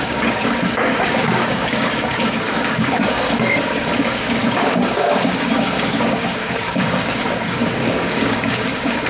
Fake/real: fake